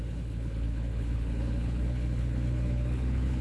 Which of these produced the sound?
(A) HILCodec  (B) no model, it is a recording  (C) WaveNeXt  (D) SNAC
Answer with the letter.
A